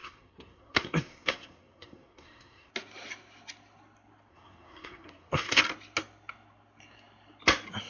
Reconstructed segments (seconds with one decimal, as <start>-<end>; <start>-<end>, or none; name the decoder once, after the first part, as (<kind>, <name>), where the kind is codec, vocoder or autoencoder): 0.0-2.7 (codec, SNAC); 4.3-5.6